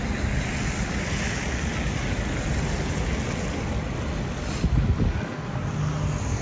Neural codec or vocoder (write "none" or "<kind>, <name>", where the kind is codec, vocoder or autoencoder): none